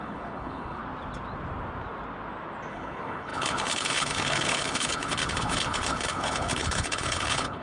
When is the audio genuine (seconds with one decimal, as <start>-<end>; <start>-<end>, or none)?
0.8-2.7